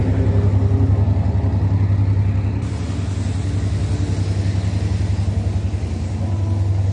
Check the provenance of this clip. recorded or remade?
recorded